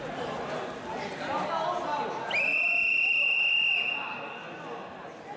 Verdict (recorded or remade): recorded